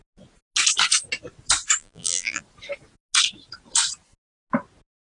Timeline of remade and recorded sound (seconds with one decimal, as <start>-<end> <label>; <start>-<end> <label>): 0.0-1.8 recorded; 1.8-2.4 remade; 2.4-5.0 recorded